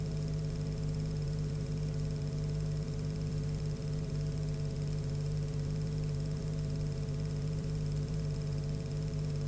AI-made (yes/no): yes